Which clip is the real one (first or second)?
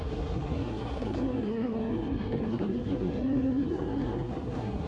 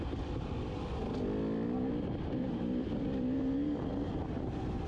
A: second